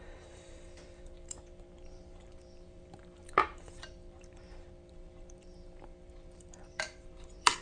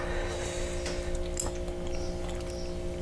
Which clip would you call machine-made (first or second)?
first